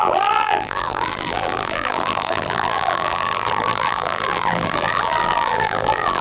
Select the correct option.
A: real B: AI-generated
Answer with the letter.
B